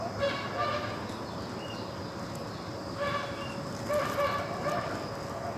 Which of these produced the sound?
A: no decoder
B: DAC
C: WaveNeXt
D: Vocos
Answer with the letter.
A